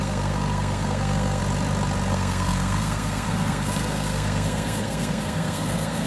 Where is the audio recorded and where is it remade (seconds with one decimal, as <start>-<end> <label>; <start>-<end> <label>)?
0.0-1.4 remade; 1.4-2.1 recorded; 2.1-6.1 remade